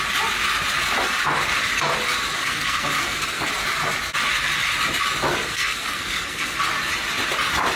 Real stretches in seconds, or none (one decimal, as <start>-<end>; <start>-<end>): 0.0-2.4; 3.5-5.3; 6.6-7.8